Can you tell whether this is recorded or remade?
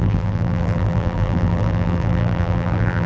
remade